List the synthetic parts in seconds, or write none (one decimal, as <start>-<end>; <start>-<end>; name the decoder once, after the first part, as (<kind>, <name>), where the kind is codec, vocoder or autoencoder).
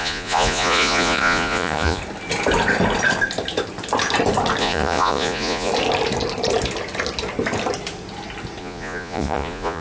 0.0-2.0 (vocoder, Vocos); 4.6-5.7; 8.6-9.8